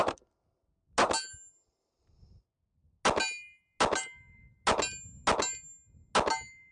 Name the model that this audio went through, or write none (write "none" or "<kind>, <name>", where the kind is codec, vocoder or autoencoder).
none